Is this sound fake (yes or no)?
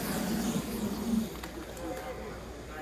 no